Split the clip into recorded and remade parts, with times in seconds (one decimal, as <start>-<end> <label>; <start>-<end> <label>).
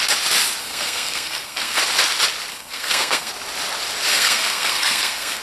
0.0-0.6 recorded; 0.6-1.8 remade; 1.8-2.5 recorded; 2.5-3.3 remade; 3.3-4.1 recorded; 4.1-5.4 remade